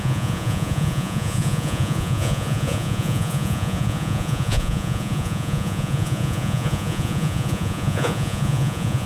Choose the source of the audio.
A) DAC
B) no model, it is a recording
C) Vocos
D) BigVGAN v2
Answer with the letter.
C